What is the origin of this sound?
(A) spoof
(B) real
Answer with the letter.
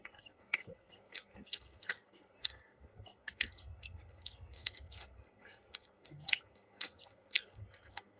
A